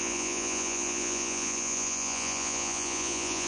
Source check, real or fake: fake